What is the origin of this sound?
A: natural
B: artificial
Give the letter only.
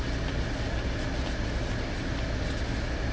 A